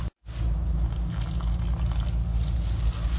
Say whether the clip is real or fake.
real